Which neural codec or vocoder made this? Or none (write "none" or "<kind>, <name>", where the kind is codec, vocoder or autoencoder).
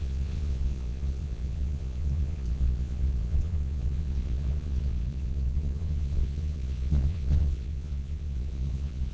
vocoder, Vocos